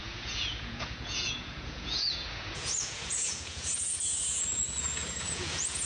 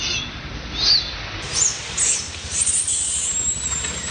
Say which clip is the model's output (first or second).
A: first